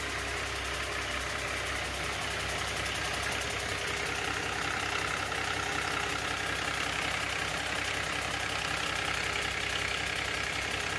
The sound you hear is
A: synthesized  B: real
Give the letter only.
B